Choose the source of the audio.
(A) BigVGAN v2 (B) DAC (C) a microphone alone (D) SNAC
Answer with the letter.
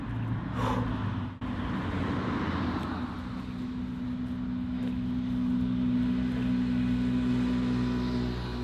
C